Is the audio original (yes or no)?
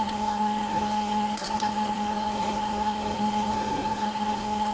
no